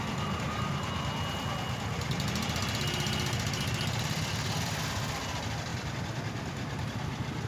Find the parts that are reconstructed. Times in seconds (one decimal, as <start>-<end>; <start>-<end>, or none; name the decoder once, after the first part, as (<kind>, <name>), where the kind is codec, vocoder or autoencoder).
none